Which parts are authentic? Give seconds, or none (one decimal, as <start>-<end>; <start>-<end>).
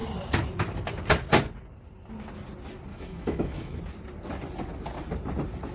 0.0-2.9; 3.8-5.7